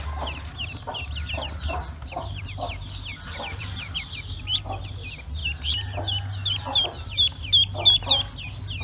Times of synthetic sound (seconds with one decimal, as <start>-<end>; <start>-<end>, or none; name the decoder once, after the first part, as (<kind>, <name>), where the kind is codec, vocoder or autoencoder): 3.1-4.8 (vocoder, BigVGAN v2)